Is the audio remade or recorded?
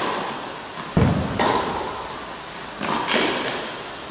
recorded